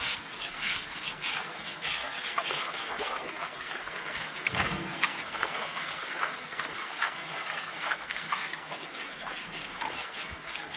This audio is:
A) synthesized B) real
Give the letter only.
A